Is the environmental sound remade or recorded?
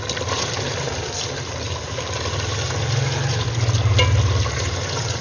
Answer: recorded